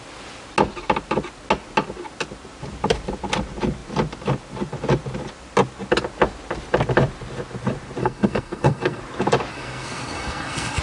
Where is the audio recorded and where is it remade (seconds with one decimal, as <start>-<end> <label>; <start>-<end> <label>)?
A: 0.0-8.0 recorded; 8.0-9.0 remade; 9.0-9.5 recorded; 9.5-10.8 remade